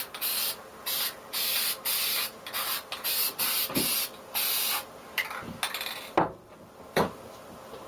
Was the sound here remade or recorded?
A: recorded